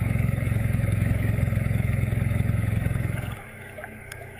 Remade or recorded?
remade